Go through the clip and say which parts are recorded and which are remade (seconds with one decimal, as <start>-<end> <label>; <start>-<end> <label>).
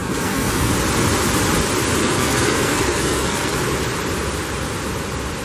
0.0-0.7 remade; 0.7-2.0 recorded; 2.0-3.6 remade; 3.6-5.4 recorded